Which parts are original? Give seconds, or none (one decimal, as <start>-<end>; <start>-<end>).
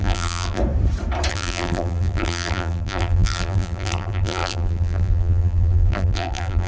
0.6-1.3